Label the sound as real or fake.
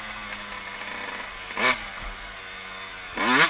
real